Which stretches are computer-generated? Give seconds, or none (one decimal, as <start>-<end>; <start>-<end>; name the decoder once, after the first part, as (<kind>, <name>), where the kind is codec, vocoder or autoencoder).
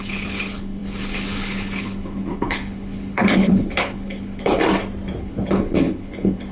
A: 0.0-4.6 (codec, HILCodec); 5.2-6.5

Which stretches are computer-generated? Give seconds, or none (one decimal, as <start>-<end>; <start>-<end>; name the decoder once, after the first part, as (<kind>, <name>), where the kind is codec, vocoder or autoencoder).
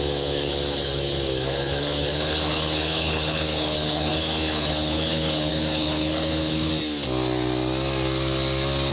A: 0.0-6.7 (codec, HILCodec)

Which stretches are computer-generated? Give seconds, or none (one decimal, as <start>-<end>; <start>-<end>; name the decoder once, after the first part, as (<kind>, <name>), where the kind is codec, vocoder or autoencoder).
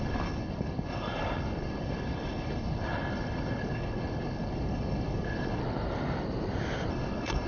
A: 0.0-5.6 (codec, HILCodec); 6.9-7.5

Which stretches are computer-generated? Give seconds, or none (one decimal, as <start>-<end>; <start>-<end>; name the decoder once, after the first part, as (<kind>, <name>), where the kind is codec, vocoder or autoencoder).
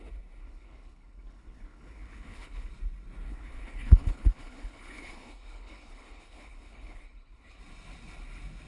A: 0.4-2.7 (codec, HILCodec); 3.3-7.6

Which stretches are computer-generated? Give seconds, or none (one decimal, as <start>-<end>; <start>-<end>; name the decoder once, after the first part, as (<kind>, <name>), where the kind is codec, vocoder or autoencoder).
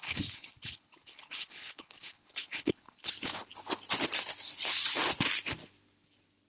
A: 0.0-3.1 (codec, HILCodec)